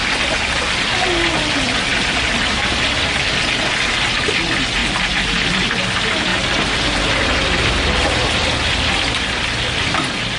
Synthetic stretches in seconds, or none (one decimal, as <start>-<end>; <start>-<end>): 1.9-2.9; 4.8-5.8; 6.3-7.7